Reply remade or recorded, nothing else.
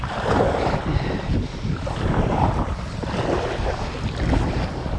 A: recorded